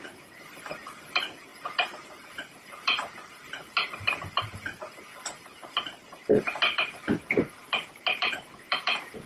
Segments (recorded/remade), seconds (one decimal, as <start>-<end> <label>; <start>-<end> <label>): 0.0-5.1 remade; 5.1-5.7 recorded; 5.7-7.1 remade; 7.1-7.6 recorded; 7.6-9.3 remade